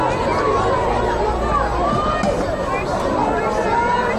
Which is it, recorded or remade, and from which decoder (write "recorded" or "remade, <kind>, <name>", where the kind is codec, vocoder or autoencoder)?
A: recorded